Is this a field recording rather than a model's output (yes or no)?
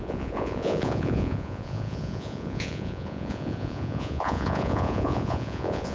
no